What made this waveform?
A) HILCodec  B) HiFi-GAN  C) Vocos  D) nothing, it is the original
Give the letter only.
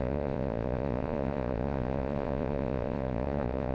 C